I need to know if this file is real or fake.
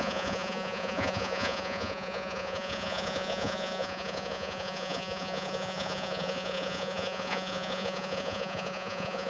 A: fake